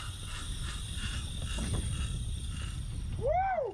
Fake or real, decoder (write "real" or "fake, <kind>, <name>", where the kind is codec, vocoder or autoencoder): real